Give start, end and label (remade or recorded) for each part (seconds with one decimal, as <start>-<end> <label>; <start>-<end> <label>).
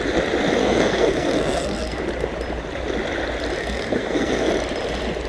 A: 0.0-0.6 recorded; 0.6-2.0 remade; 2.0-3.6 recorded; 3.6-4.5 remade; 4.5-5.3 recorded